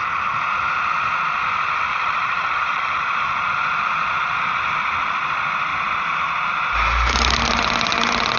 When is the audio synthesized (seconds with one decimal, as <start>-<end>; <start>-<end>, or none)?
1.9-3.0